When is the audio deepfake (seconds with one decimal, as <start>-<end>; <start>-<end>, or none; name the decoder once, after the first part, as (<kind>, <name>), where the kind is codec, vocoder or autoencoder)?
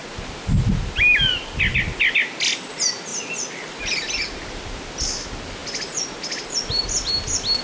none